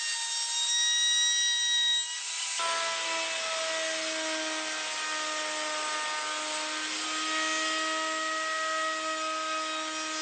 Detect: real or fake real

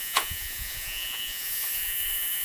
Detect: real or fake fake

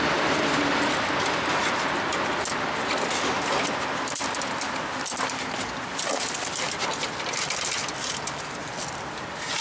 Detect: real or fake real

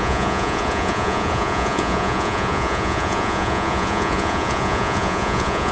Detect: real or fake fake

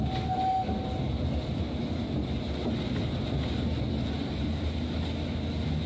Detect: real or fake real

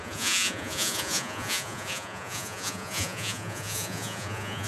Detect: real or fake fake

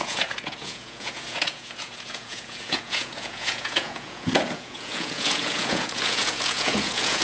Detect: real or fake fake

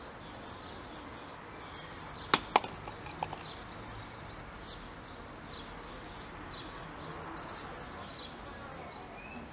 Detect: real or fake real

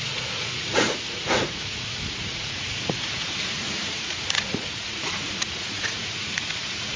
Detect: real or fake fake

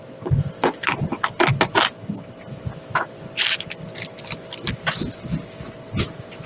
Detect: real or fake real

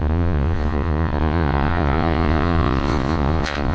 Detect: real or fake fake